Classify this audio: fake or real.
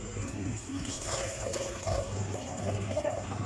fake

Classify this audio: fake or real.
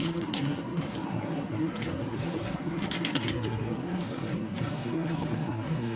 fake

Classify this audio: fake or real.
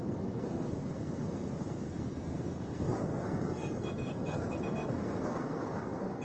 fake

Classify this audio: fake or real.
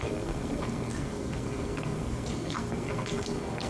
fake